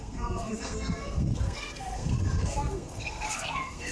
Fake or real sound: fake